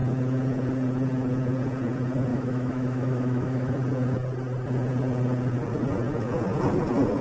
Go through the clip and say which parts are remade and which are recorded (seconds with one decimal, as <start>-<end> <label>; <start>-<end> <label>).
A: 0.0-2.3 recorded; 2.3-3.7 remade; 3.7-7.2 recorded